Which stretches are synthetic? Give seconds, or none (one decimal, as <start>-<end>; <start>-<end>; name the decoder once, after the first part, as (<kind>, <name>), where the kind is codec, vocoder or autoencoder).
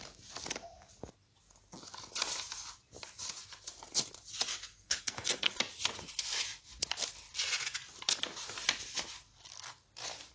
4.5-5.6 (codec, SNAC)